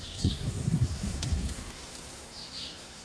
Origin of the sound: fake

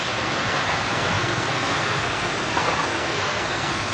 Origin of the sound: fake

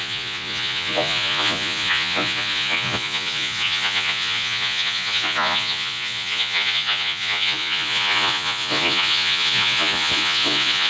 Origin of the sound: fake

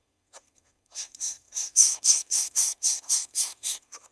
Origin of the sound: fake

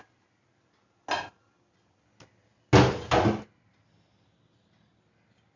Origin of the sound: real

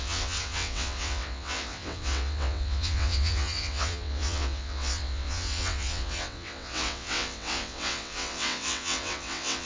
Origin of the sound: fake